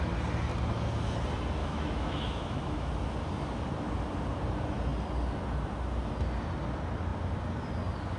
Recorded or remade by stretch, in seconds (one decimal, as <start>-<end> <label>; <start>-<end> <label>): 0.0-1.6 recorded; 1.6-2.9 remade; 2.9-8.2 recorded